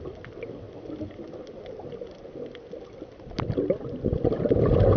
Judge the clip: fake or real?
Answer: real